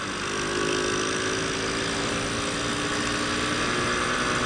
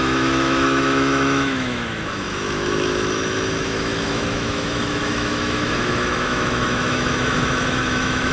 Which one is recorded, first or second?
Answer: first